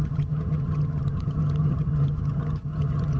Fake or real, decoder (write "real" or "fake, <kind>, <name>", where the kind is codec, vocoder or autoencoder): fake, vocoder, HiFi-GAN